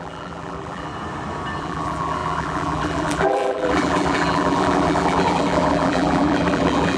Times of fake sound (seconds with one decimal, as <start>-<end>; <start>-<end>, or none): 0.0-0.9; 1.6-7.0